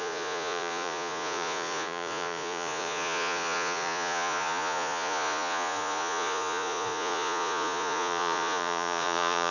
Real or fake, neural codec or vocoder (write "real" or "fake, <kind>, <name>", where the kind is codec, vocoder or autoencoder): fake, vocoder, Vocos